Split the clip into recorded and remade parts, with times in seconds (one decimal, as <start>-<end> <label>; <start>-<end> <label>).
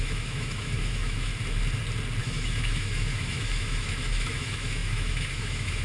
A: 0.0-1.3 remade; 1.3-2.2 recorded; 2.2-5.8 remade